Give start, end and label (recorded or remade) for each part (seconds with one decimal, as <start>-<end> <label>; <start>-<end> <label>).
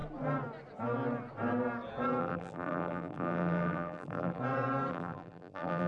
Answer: 0.0-2.2 recorded; 2.2-4.4 remade; 4.4-4.9 recorded; 4.9-5.9 remade